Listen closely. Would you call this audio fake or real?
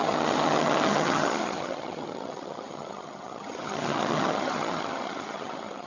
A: fake